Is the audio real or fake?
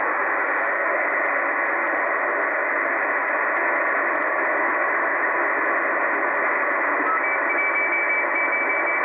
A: real